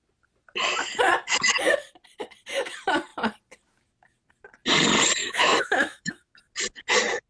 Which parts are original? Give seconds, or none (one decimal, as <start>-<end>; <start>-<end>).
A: 0.0-5.2; 6.3-7.3